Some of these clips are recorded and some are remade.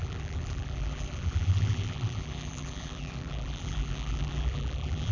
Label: remade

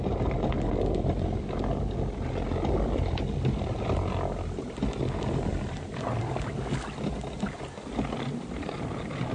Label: recorded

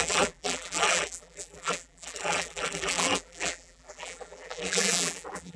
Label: remade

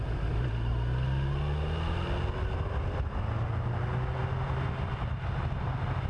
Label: recorded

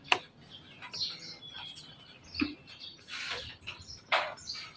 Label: recorded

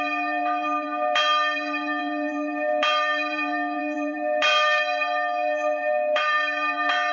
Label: remade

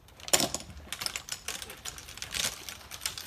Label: recorded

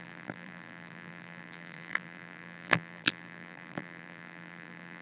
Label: remade